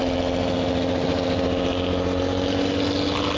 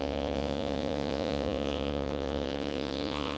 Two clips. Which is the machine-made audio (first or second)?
second